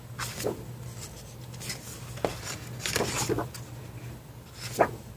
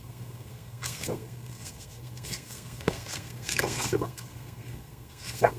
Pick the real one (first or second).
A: first